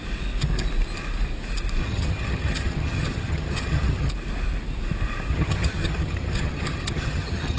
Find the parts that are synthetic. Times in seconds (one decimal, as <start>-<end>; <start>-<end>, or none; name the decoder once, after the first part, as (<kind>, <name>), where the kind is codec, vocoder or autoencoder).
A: 1.8-4.1 (vocoder, HiFi-GAN); 5.3-7.6